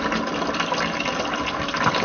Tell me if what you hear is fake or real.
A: real